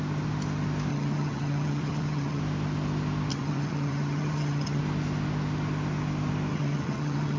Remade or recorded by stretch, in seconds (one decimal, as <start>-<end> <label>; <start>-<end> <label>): 0.0-0.9 recorded; 0.9-2.4 remade; 2.4-3.3 recorded; 3.3-4.8 remade; 4.8-6.5 recorded; 6.5-7.4 remade